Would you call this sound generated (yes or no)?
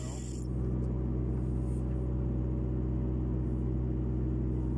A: no